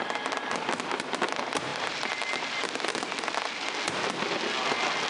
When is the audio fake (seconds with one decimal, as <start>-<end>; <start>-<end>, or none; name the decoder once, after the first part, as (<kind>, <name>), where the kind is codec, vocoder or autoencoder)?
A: none